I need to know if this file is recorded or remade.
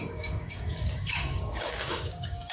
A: remade